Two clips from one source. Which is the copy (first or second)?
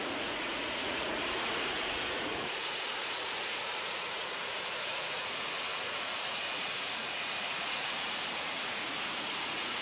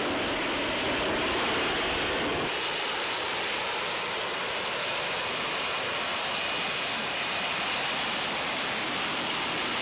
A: first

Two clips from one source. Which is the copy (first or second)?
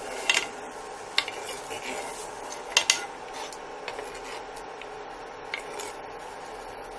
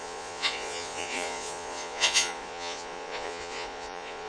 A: second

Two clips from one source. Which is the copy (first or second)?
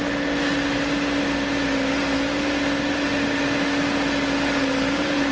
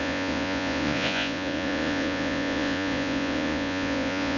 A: second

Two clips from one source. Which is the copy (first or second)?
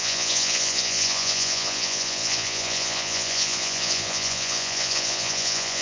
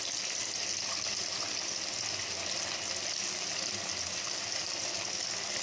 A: first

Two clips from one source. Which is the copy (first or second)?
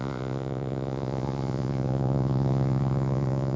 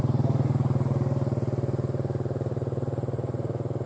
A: first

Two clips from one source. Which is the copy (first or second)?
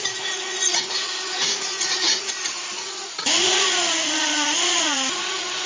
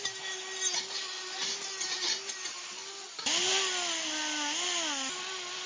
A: first